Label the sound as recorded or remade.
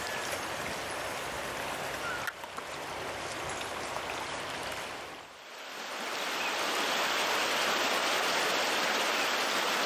recorded